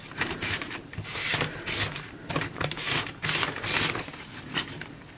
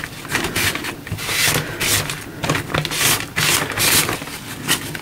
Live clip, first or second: second